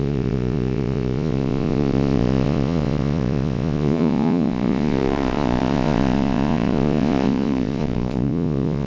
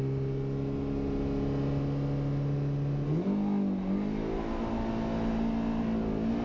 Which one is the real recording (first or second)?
second